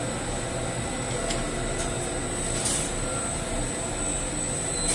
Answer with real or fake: real